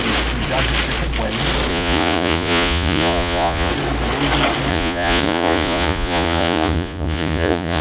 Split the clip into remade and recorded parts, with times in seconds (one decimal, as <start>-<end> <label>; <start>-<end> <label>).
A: 0.0-1.7 recorded; 1.7-3.7 remade; 3.7-4.7 recorded; 4.7-7.8 remade